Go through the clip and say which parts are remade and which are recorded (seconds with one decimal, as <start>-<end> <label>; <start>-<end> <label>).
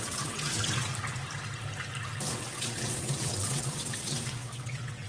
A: 0.0-0.9 remade; 0.9-2.3 recorded; 2.3-5.1 remade